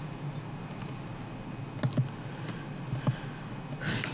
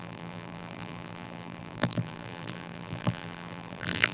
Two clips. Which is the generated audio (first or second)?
second